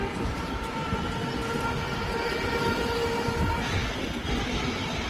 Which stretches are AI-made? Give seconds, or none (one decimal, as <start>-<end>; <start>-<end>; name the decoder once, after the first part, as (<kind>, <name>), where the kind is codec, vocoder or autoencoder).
none

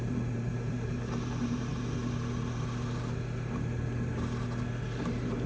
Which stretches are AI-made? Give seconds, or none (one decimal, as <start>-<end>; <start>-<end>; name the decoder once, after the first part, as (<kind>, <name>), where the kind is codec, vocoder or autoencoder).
0.0-1.7 (vocoder, BigVGAN v2); 5.0-5.5

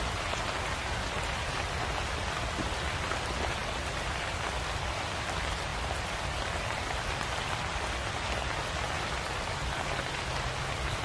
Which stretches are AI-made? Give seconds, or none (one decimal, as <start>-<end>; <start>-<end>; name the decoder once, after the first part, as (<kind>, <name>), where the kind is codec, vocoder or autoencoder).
none